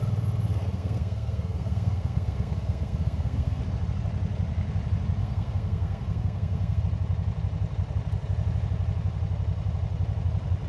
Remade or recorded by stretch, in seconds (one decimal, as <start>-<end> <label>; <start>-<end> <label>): 0.0-0.5 recorded; 0.5-3.6 remade; 3.6-5.2 recorded; 5.2-6.8 remade; 6.8-10.7 recorded